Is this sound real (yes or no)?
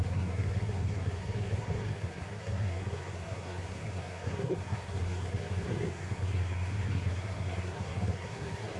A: no